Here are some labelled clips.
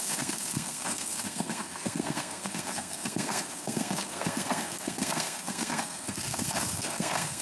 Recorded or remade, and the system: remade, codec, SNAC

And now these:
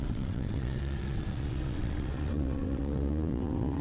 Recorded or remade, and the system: remade, vocoder, WaveNeXt